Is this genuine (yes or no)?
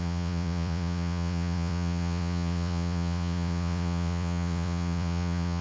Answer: no